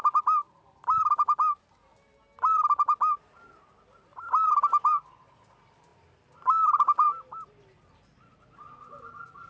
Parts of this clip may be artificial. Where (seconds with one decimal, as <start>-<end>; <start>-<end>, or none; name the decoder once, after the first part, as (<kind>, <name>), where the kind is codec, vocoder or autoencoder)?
5.9-9.1 (vocoder, BigVGAN v2)